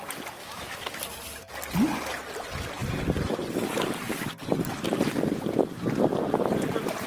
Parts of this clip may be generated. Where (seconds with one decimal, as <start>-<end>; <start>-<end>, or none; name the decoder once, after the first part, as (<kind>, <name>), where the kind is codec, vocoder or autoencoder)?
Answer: 0.4-1.0 (autoencoder, DAC-VAE)